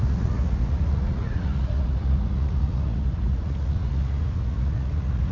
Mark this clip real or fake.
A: fake